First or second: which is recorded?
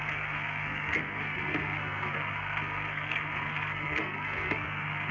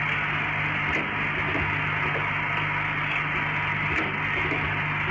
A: second